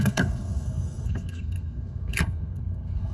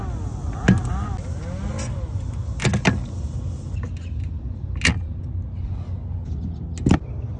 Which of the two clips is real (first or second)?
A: second